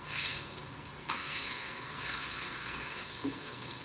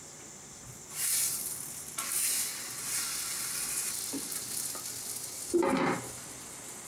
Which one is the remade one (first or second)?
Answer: first